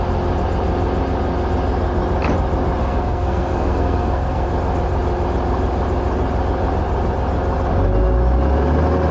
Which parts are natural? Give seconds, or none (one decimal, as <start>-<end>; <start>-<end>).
0.0-2.8; 4.5-9.1